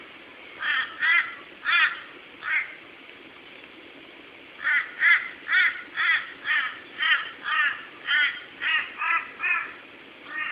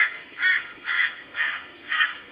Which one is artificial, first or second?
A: second